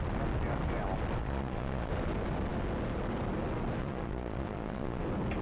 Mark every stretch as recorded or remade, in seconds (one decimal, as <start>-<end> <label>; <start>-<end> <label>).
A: 0.0-1.2 recorded; 1.2-1.9 remade; 1.9-3.8 recorded; 3.8-5.0 remade; 5.0-5.4 recorded